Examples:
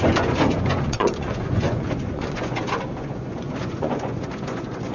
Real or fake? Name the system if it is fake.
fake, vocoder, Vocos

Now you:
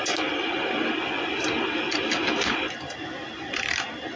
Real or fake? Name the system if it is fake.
real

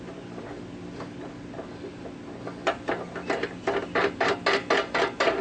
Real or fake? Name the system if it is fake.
real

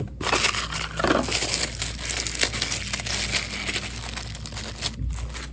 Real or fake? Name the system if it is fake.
real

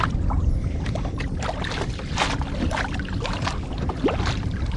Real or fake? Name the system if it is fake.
real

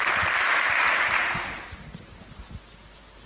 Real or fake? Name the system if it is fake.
real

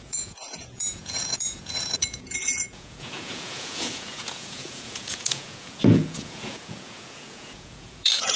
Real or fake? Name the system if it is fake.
fake, vocoder, Vocos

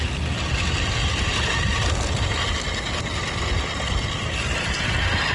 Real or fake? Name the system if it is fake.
real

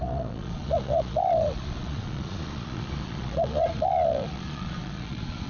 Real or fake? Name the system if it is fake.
fake, vocoder, Vocos